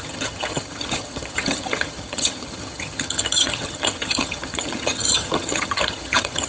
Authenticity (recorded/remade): remade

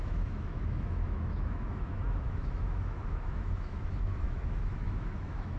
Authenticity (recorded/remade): remade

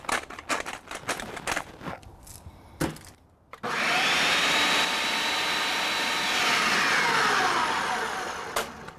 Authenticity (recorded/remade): recorded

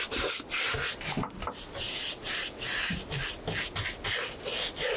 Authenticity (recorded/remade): recorded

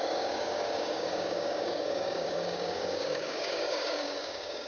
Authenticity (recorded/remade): remade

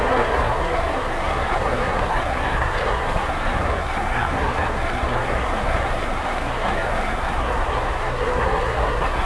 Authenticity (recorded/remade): remade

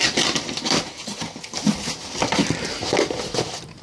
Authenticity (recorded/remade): recorded